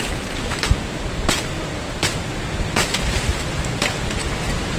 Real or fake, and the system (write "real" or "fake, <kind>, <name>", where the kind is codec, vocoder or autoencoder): real